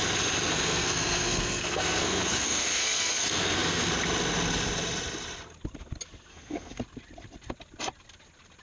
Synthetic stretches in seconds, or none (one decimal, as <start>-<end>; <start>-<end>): 0.5-3.9; 6.3-6.8